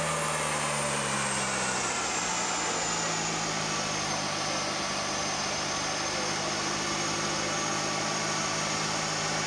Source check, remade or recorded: recorded